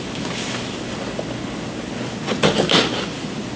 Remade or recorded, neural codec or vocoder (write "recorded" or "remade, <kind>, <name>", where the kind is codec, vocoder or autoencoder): recorded